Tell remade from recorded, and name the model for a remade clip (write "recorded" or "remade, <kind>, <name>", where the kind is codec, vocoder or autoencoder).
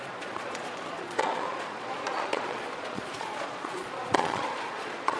remade, vocoder, Vocos